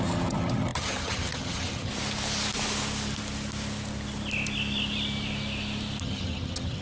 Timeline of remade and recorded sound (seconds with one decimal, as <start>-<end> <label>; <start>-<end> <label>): 0.0-1.9 remade; 1.9-6.0 recorded; 6.0-6.8 remade